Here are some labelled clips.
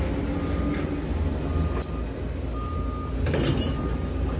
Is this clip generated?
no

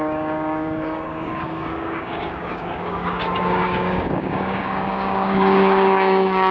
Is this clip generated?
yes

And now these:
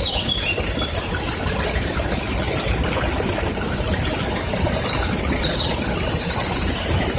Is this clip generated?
no